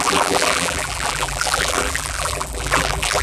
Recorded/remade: remade